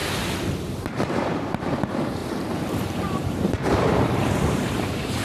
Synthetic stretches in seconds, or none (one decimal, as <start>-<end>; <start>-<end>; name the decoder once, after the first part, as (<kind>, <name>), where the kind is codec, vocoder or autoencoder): 0.8-5.2 (vocoder, BigVGAN v2)